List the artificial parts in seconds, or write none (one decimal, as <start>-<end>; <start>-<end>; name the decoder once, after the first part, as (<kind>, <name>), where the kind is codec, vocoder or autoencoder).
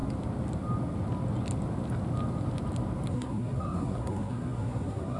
3.1-5.2 (codec, SNAC)